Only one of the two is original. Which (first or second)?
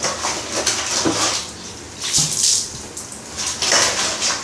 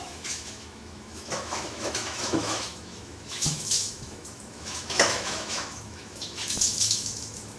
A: first